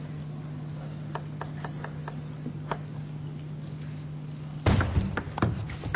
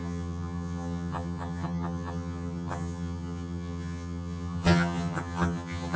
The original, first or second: first